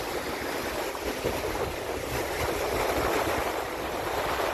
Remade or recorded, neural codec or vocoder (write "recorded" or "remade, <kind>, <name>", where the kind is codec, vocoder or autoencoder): remade, vocoder, BigVGAN v2